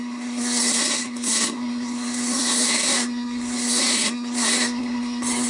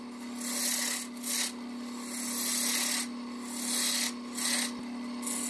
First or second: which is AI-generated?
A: first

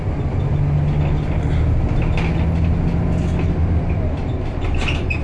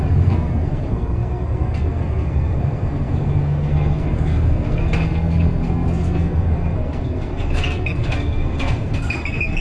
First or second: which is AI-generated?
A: second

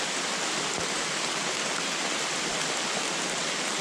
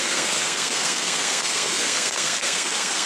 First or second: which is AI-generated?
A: second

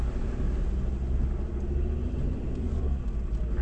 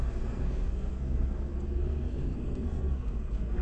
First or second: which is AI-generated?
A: second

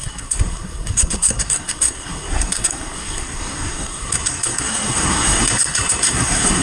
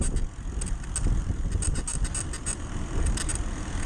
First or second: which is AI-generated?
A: first